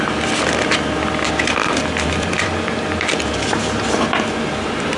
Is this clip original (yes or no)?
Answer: no